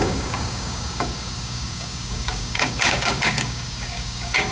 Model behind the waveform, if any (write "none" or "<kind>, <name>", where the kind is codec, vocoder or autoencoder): codec, DAC